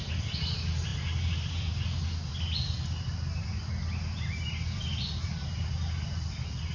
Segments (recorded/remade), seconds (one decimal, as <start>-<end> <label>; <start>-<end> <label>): 0.0-6.7 recorded

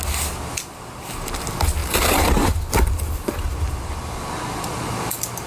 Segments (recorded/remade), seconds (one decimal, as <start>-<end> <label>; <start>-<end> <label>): 0.0-5.5 recorded

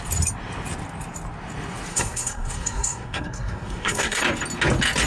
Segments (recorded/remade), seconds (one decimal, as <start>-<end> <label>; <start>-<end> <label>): 0.0-1.9 recorded; 1.9-4.2 remade; 4.2-5.1 recorded

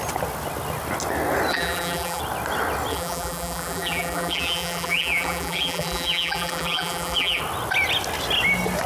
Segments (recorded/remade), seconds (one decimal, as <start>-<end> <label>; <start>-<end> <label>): 0.0-1.5 recorded; 1.5-2.2 remade; 2.2-2.9 recorded; 2.9-7.4 remade; 7.4-8.9 recorded